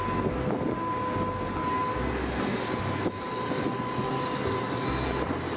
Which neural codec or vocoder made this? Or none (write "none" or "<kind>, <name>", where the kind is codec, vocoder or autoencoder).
none